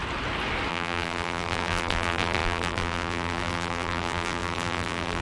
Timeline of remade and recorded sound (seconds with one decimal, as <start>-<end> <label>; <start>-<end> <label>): 0.0-0.7 recorded; 0.7-5.2 remade